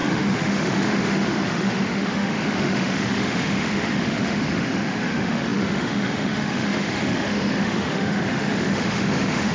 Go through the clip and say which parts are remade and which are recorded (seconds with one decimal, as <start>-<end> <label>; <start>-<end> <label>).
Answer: 0.0-9.5 remade